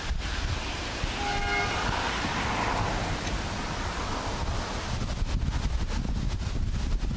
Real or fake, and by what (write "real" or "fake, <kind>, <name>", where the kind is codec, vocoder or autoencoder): real